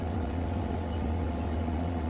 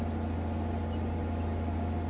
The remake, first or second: first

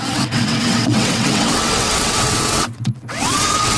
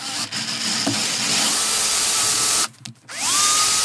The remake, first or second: first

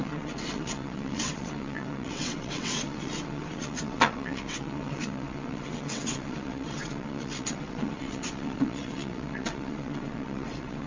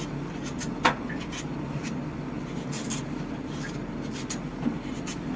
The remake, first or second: first